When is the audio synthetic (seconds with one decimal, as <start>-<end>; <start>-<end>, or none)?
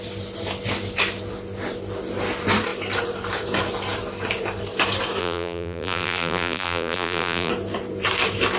5.2-7.5